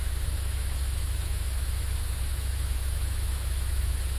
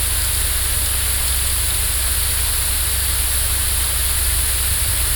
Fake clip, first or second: first